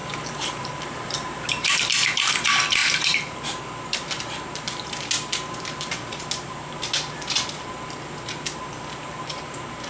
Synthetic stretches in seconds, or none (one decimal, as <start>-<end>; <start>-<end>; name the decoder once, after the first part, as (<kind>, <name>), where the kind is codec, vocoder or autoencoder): 0.0-1.9 (vocoder, BigVGAN v2)